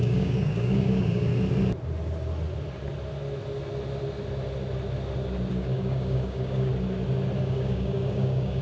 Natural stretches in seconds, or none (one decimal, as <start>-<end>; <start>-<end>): 1.3-5.5; 6.7-7.4